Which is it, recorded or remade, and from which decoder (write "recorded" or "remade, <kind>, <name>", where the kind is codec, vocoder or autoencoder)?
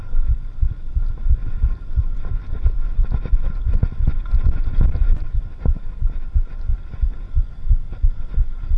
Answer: recorded